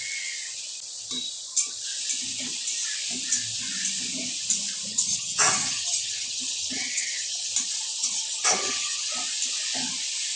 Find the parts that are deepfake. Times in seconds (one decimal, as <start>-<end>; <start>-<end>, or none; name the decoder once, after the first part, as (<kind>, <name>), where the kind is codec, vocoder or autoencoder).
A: 4.9-7.5 (vocoder, HiFi-GAN); 8.0-9.1